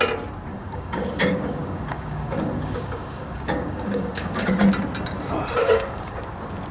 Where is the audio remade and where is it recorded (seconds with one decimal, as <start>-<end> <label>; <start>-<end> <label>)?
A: 0.0-0.5 recorded; 0.5-4.5 remade; 4.5-5.6 recorded; 5.6-6.2 remade; 6.2-6.7 recorded